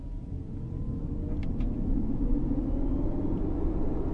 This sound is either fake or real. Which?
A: real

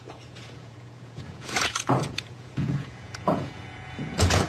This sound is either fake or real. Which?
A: fake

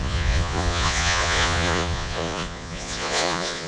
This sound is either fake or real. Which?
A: fake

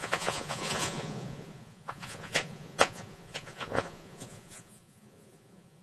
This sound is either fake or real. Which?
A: fake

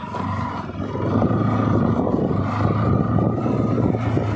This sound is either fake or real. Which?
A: real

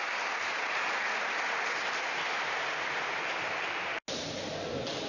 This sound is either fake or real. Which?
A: real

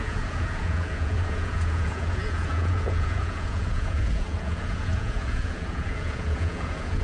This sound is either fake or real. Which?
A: fake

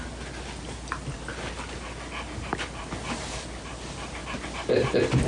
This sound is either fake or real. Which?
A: real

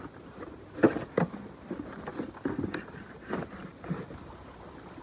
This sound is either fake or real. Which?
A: real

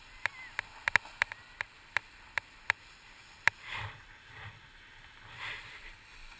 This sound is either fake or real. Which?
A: real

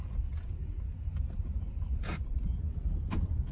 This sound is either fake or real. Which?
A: real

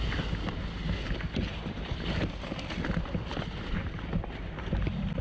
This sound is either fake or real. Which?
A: real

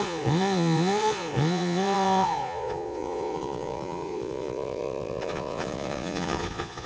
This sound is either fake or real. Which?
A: fake